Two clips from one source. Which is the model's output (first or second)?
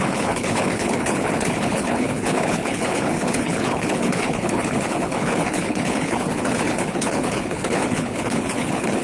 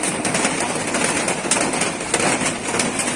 first